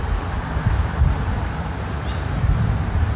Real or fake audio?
fake